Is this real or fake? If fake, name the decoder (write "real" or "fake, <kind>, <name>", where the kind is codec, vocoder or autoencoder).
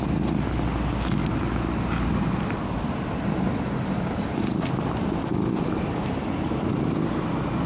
real